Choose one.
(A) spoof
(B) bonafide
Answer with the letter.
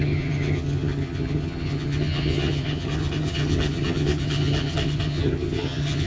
A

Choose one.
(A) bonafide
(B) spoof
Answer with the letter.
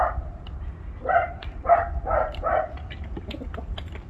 A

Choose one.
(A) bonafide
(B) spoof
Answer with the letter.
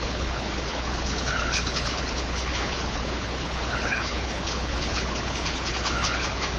B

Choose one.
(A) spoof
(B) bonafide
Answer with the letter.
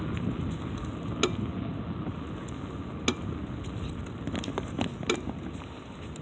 B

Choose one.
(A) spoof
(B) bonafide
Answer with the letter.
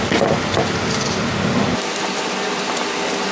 B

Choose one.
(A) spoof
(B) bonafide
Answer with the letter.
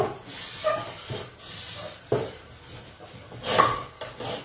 B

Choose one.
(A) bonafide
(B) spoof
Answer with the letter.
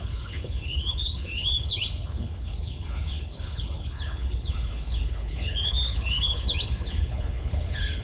B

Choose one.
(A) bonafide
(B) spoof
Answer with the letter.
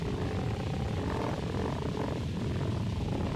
A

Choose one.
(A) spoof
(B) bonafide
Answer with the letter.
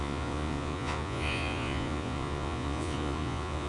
A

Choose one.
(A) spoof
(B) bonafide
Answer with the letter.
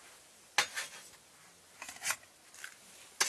B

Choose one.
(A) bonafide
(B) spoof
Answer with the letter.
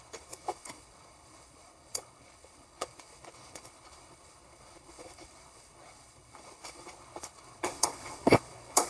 B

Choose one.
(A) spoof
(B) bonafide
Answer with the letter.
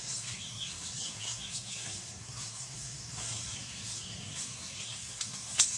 A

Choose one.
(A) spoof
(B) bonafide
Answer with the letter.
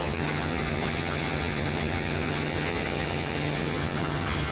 A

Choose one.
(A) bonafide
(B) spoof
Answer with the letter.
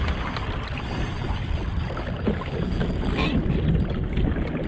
A